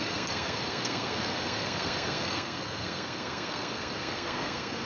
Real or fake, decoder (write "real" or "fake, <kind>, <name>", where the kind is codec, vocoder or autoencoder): fake, codec, SNAC